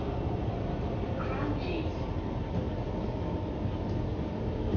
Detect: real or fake real